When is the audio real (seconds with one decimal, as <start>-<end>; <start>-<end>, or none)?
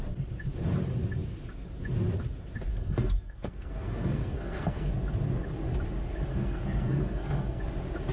0.0-2.7; 4.9-6.3; 7.6-8.1